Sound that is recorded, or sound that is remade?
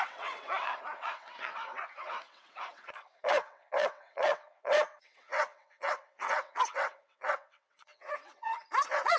remade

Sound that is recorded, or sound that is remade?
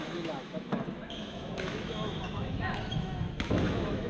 remade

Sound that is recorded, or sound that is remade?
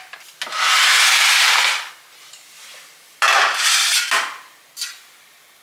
recorded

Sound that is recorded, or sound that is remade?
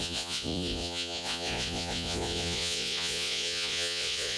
remade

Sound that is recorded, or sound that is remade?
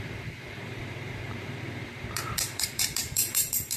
remade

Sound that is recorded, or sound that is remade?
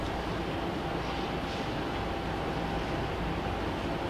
recorded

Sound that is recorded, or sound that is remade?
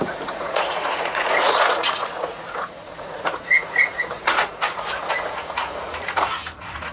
remade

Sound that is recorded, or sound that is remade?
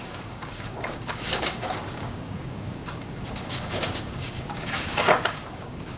remade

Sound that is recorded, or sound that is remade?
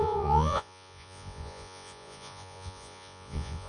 remade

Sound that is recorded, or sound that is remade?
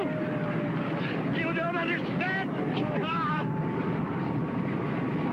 recorded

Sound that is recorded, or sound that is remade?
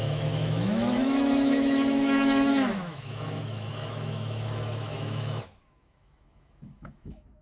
remade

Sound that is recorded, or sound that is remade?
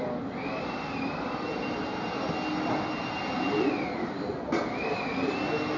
recorded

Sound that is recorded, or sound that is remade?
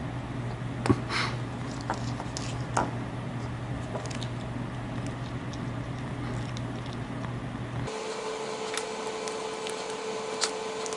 recorded